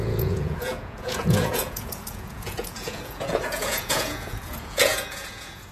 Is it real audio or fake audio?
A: fake